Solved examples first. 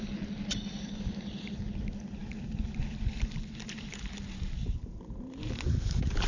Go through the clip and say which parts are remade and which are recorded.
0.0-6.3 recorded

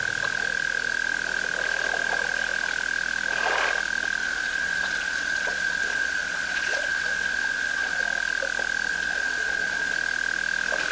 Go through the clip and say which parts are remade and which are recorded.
0.0-4.2 recorded; 4.2-8.0 remade; 8.0-8.9 recorded; 8.9-9.9 remade; 9.9-10.9 recorded